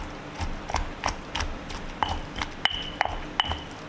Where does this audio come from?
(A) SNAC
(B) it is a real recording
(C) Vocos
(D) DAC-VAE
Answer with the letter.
B